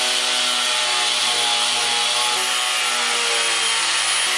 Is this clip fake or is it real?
real